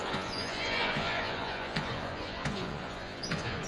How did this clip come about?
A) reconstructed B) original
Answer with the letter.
A